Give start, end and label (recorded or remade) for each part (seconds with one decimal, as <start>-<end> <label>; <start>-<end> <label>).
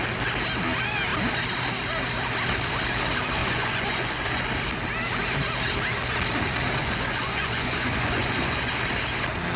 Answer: 0.0-3.4 recorded; 3.4-4.5 remade; 4.5-6.8 recorded; 6.8-8.7 remade; 8.7-9.6 recorded